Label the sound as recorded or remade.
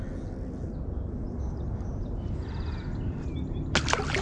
recorded